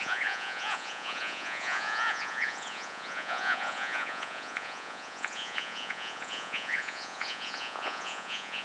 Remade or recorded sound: remade